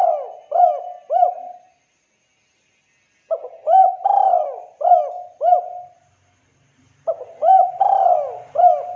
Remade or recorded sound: recorded